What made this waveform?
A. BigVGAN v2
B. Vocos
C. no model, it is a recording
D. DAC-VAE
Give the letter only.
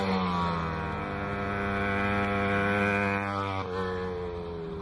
C